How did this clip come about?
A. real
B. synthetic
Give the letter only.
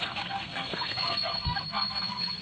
B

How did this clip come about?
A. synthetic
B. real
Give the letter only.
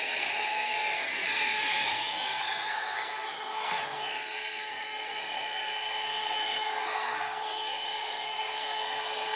A